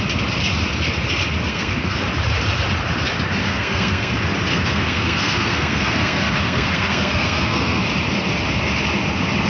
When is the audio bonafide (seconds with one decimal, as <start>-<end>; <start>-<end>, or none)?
0.0-1.5; 2.0-3.4; 4.1-4.5; 7.8-9.5